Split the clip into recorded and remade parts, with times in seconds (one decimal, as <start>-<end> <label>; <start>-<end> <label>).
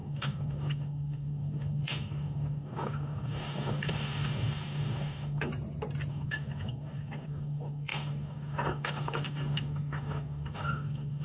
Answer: 0.0-5.5 remade; 5.5-6.1 recorded; 6.1-11.2 remade